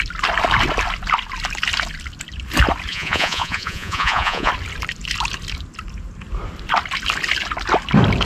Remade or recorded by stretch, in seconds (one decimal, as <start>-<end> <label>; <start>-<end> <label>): 0.0-2.9 recorded; 2.9-4.5 remade; 4.5-8.3 recorded